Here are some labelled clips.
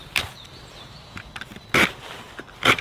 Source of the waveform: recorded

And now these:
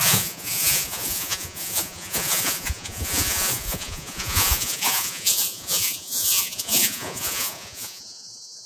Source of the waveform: remade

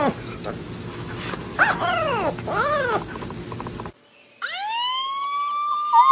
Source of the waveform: recorded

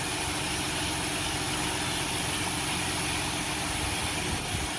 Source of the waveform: recorded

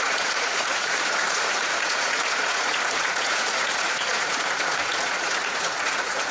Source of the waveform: remade